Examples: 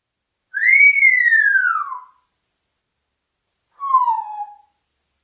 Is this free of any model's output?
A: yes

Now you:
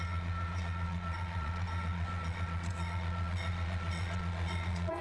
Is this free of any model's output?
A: no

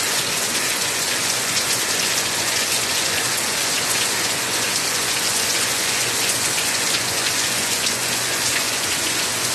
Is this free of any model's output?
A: no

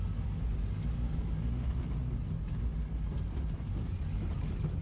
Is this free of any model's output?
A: yes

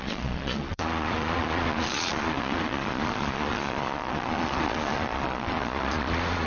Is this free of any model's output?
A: no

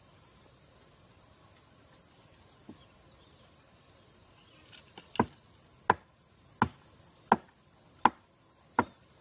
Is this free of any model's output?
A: yes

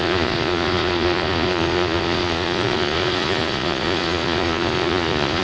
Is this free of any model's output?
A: no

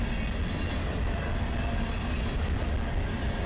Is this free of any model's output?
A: yes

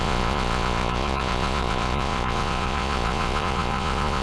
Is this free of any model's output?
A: no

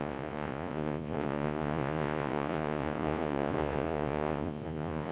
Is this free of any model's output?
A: no